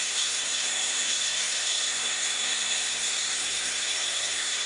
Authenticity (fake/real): fake